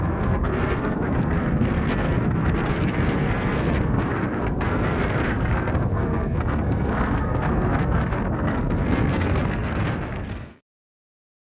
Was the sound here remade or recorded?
remade